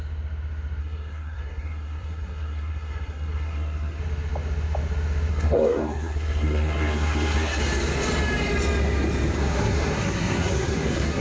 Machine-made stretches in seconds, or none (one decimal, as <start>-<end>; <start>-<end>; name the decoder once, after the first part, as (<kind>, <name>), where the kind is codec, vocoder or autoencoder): 0.8-4.0 (codec, SNAC); 5.3-7.6; 9.4-11.2